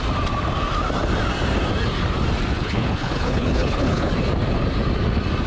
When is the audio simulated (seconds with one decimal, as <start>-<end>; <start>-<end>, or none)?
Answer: 2.5-4.1